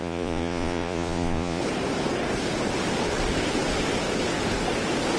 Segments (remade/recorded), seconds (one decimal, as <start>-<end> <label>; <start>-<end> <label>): 0.0-1.6 remade; 1.6-5.2 recorded